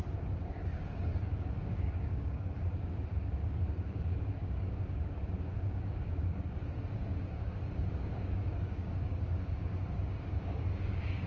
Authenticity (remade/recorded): remade